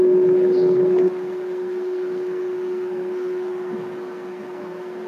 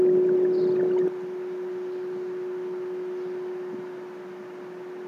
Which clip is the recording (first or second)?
second